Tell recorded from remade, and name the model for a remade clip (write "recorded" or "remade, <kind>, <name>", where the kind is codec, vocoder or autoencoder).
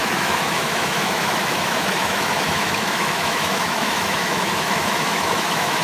remade, autoencoder, DAC-VAE